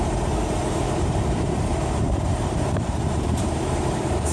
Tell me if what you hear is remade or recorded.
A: remade